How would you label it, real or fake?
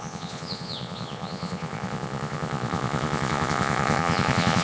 fake